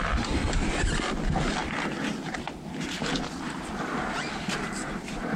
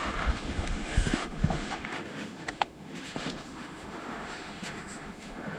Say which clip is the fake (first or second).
second